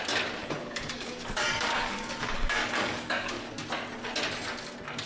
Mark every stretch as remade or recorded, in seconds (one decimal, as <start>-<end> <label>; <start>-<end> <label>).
0.0-0.4 recorded; 0.4-3.5 remade; 3.5-5.1 recorded